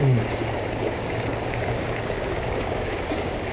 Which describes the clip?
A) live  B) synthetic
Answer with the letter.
B